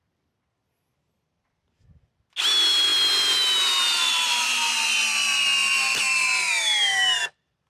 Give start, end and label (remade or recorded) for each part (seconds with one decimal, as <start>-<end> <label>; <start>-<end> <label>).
0.0-7.7 recorded